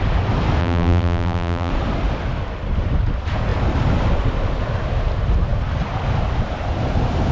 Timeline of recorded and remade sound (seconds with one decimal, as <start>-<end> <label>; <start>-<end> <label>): 0.0-0.6 recorded; 0.6-1.7 remade; 1.7-7.3 recorded

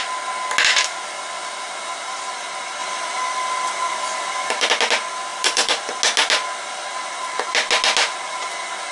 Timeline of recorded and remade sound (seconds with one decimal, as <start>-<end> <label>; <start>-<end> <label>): 0.0-2.8 recorded; 2.8-4.7 remade; 4.7-5.3 recorded; 5.3-6.0 remade; 6.0-8.9 recorded

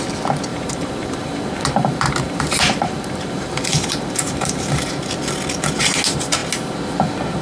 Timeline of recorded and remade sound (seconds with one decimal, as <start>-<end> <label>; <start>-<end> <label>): 0.0-0.5 recorded; 0.5-4.9 remade; 4.9-7.4 recorded

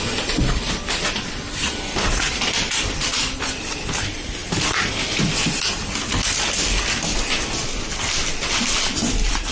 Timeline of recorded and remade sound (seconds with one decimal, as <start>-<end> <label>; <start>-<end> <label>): 0.0-4.4 remade; 4.4-9.5 recorded

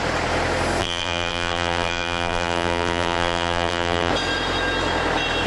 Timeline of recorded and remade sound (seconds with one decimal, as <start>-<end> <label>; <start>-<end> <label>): 0.0-0.8 recorded; 0.8-4.1 remade; 4.1-5.5 recorded